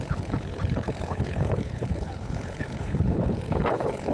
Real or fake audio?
fake